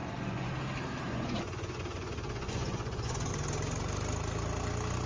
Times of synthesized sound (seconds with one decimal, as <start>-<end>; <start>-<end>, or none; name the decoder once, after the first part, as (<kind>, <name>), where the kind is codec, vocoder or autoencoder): 0.0-0.5 (vocoder, Vocos); 1.1-3.3